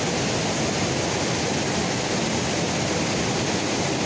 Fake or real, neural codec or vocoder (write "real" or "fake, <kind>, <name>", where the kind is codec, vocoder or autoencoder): real